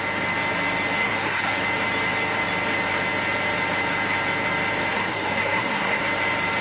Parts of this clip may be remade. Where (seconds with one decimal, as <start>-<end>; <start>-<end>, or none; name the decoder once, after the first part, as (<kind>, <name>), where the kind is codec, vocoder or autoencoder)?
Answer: 1.0-1.6 (codec, SNAC); 4.9-6.0